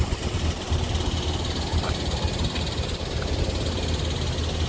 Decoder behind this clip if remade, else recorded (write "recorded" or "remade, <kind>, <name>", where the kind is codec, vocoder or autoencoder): recorded